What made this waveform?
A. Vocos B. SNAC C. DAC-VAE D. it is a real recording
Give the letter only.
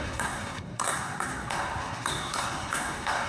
B